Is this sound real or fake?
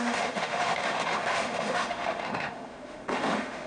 fake